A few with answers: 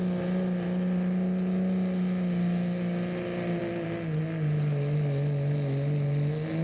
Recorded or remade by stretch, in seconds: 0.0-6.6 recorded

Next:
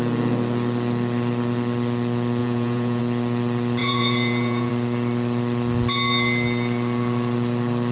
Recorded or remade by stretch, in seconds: 0.0-2.4 recorded; 2.4-3.0 remade; 3.0-3.8 recorded; 3.8-4.7 remade; 4.7-7.9 recorded

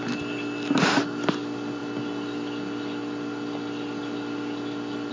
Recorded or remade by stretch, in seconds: 0.0-5.1 recorded

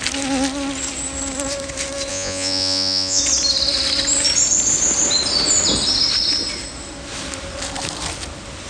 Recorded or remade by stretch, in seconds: 0.0-2.1 recorded; 2.1-3.2 remade; 3.2-8.7 recorded

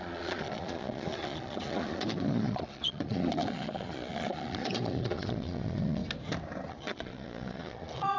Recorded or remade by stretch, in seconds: 0.0-6.0 remade; 6.0-6.7 recorded; 6.7-8.2 remade